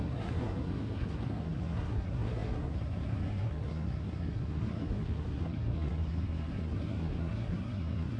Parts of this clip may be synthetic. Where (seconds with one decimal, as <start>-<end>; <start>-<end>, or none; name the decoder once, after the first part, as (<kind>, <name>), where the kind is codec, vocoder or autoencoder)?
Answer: 0.0-8.2 (codec, SNAC)